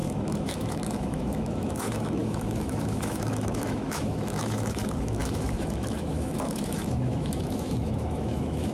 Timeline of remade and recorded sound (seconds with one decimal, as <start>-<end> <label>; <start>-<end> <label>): 0.0-8.7 remade